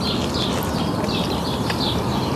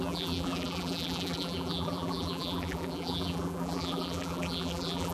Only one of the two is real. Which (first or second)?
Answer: first